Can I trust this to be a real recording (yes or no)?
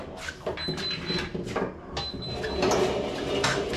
yes